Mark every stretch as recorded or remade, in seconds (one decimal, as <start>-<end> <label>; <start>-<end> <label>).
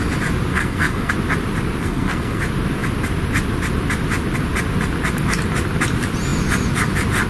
0.0-0.5 recorded; 0.5-1.1 remade; 1.1-1.8 recorded; 1.8-2.4 remade; 2.4-7.3 recorded